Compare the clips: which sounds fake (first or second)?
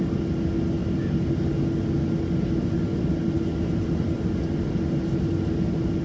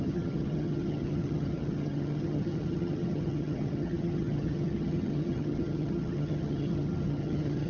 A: second